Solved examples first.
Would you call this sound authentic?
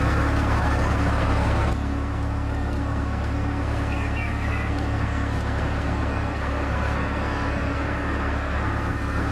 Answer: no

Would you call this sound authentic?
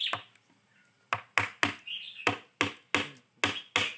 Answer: yes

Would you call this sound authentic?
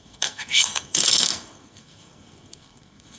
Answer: no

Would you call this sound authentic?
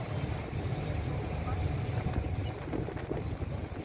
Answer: yes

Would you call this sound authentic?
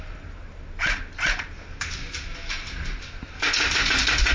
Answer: yes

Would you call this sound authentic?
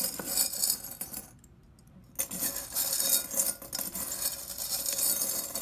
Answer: yes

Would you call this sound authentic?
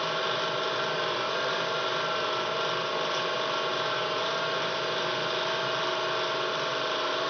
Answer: yes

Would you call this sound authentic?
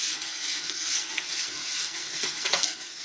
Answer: no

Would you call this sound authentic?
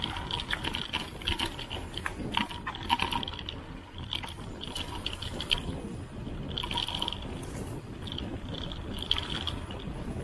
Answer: yes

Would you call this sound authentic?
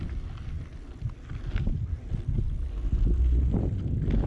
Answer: yes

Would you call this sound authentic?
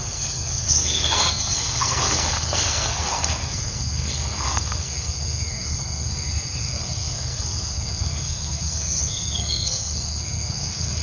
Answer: no